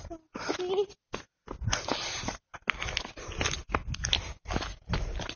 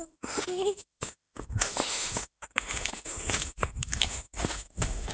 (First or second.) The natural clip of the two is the first